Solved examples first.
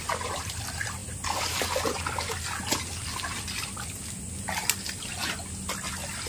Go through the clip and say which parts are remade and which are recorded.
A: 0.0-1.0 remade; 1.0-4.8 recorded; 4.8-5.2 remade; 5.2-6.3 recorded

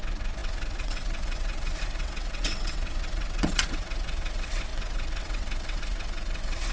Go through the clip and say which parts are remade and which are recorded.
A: 0.0-6.7 remade

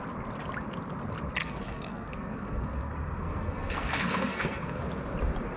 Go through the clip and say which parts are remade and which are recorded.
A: 0.0-1.4 recorded; 1.4-4.8 remade; 4.8-5.6 recorded

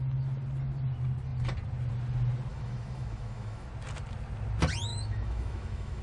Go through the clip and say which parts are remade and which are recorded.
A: 0.0-2.5 recorded; 2.5-3.7 remade; 3.7-4.9 recorded; 4.9-6.0 remade